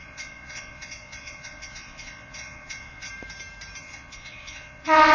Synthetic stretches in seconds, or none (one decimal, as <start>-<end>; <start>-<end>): 0.0-3.1; 3.8-5.1